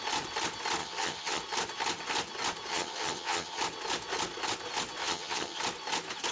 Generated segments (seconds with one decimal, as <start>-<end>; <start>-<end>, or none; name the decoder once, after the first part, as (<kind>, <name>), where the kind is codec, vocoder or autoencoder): 0.8-1.4 (vocoder, HiFi-GAN); 2.7-3.6; 5.0-5.6